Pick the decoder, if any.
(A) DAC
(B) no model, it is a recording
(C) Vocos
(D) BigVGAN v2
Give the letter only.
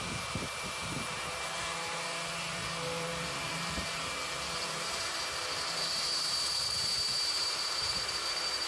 D